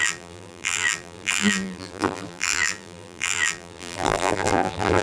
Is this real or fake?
fake